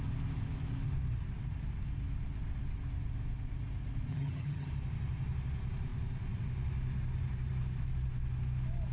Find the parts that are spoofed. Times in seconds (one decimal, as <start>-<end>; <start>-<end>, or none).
4.1-4.7